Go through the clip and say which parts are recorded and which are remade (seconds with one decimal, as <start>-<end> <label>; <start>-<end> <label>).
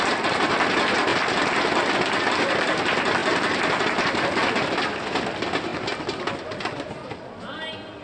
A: 0.0-8.0 recorded